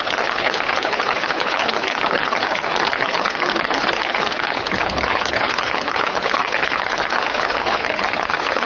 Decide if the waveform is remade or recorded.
remade